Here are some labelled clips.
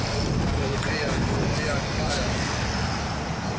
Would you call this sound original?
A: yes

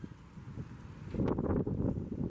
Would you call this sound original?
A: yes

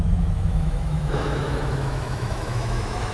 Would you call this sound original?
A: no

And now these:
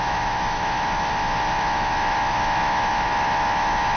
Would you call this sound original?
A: no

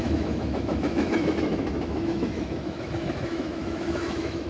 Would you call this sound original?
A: no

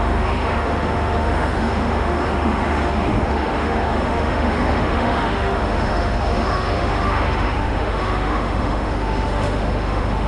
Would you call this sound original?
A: no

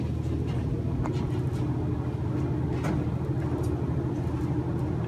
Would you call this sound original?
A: yes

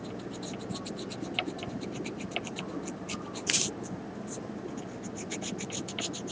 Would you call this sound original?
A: yes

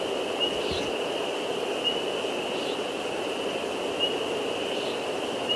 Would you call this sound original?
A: yes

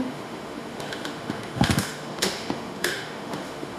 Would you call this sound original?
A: no